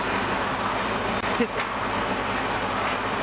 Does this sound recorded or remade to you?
recorded